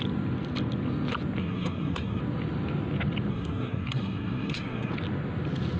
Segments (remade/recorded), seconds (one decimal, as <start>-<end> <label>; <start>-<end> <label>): 0.0-1.4 recorded; 1.4-2.2 remade; 2.2-3.3 recorded; 3.3-4.9 remade; 4.9-5.8 recorded